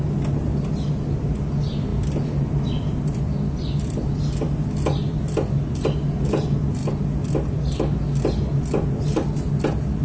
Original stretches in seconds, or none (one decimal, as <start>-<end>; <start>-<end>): 0.0-10.0